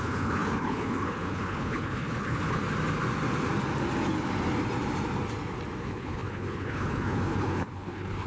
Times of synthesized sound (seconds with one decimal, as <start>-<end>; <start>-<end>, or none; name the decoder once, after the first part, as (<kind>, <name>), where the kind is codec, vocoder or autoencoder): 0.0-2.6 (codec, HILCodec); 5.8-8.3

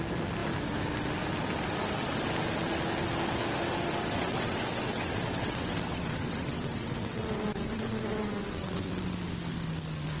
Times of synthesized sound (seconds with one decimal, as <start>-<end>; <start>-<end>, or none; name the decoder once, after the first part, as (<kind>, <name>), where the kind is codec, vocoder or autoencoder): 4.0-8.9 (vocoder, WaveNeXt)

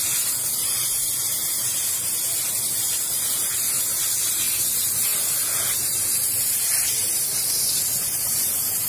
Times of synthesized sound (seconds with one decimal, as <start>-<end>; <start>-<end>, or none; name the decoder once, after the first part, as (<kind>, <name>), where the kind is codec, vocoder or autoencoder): none